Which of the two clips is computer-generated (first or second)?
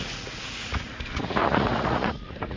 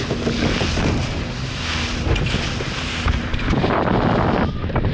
first